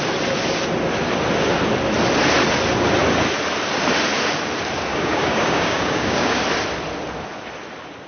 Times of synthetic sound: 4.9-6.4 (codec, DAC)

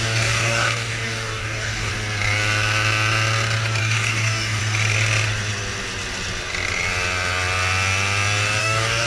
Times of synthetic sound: 0.0-1.9 (codec, DAC); 3.8-4.6; 8.6-9.1

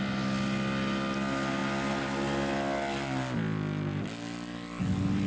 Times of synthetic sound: none

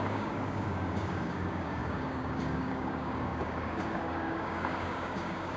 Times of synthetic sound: 0.0-5.6 (codec, DAC)

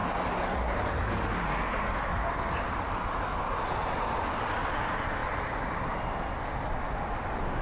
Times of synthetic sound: none

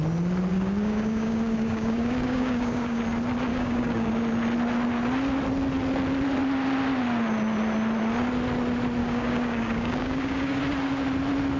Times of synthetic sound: 0.5-3.0 (codec, DAC); 3.5-4.1; 9.0-10.6

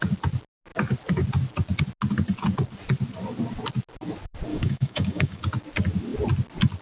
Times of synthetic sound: 4.5-5.4 (codec, DAC)

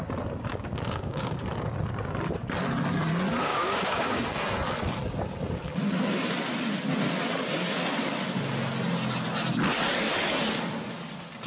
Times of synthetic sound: 0.5-1.4 (codec, DAC); 3.5-4.2